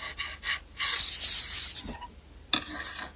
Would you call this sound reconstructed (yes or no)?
no